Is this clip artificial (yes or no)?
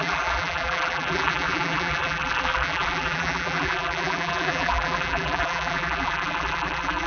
yes